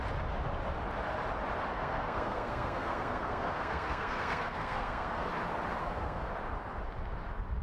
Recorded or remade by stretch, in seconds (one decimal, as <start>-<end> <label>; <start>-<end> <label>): 0.0-1.7 recorded; 1.7-5.3 remade; 5.3-5.8 recorded; 5.8-6.3 remade; 6.3-7.6 recorded

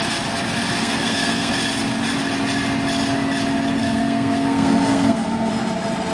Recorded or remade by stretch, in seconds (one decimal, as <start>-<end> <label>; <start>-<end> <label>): 0.0-0.8 recorded; 0.8-1.5 remade; 1.5-3.8 recorded; 3.8-5.5 remade; 5.5-6.1 recorded

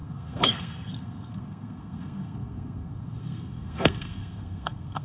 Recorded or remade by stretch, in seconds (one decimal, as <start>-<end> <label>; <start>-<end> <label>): 0.0-5.0 remade

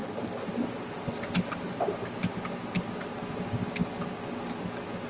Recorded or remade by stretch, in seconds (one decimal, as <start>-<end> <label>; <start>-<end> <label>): 0.0-5.1 recorded

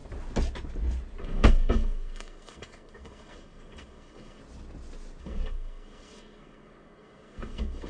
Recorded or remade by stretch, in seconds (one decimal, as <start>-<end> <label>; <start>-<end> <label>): 0.0-1.2 recorded; 1.2-4.4 remade; 4.4-5.2 recorded; 5.2-7.9 remade

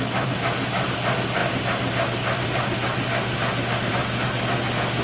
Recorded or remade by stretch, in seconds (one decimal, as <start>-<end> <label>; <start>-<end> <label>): 0.0-5.0 recorded

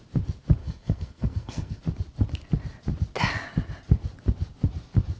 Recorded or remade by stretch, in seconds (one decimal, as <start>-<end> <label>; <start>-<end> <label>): 0.0-0.6 recorded; 0.6-1.8 remade; 1.8-5.2 recorded

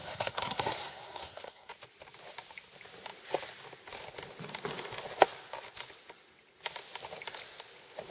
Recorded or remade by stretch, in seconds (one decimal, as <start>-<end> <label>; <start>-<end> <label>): 0.0-1.7 remade; 1.7-8.1 recorded